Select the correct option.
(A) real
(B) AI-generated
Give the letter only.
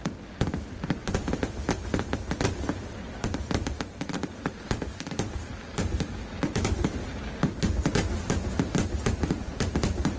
B